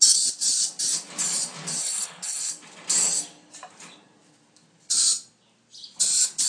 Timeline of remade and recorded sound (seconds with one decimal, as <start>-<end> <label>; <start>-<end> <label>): 0.0-1.8 recorded; 1.8-2.5 remade; 2.5-6.5 recorded